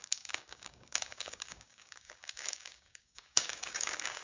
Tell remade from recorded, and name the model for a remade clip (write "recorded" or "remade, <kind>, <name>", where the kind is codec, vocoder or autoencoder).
remade, codec, DAC